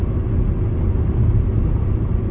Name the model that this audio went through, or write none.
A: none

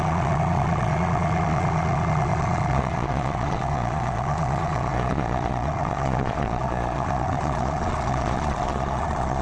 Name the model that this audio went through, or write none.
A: vocoder, Vocos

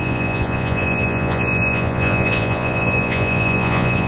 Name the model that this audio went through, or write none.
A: vocoder, Vocos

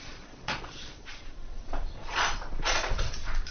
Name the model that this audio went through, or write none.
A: vocoder, Vocos